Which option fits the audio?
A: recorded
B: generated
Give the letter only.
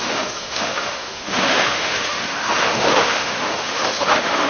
B